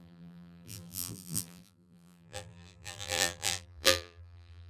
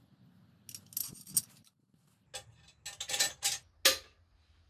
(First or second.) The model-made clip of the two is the first